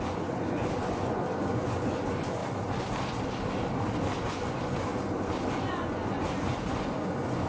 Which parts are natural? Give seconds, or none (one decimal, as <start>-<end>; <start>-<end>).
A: 2.4-4.3; 4.9-5.5